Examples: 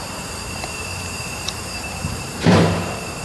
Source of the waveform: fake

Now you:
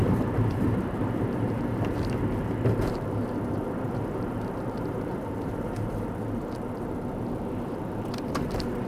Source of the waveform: fake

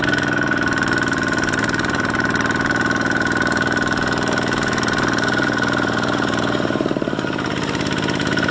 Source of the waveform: fake